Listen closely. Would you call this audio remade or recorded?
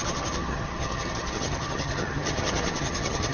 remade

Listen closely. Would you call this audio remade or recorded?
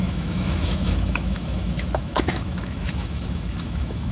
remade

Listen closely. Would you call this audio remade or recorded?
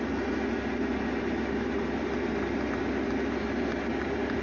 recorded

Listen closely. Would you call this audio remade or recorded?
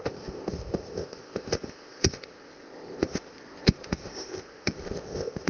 remade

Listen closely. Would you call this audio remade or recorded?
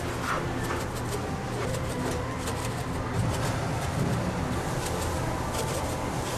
recorded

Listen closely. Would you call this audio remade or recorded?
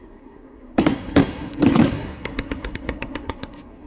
remade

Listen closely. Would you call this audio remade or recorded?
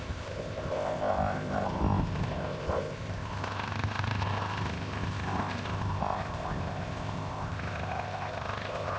remade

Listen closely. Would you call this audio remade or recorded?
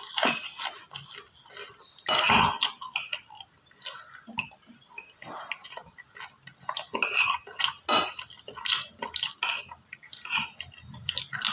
recorded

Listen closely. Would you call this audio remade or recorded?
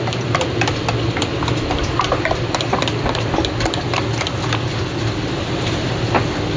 recorded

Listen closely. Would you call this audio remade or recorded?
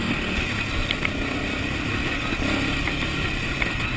recorded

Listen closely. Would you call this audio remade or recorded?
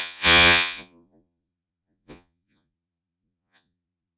remade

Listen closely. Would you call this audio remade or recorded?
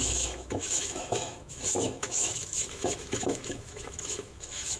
remade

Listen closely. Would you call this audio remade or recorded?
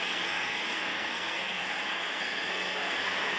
remade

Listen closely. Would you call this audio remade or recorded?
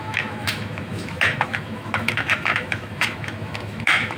remade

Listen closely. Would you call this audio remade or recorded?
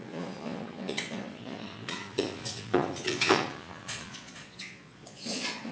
remade